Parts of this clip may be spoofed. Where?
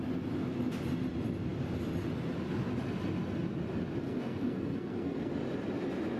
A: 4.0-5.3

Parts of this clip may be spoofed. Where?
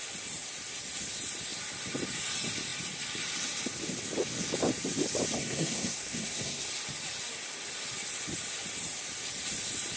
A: 5.4-6.7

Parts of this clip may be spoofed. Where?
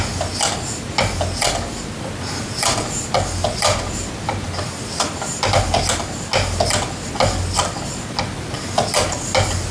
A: none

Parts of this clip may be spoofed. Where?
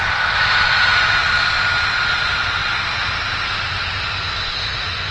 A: none